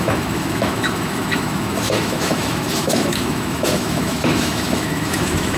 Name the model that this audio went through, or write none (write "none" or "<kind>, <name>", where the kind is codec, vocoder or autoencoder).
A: autoencoder, DAC-VAE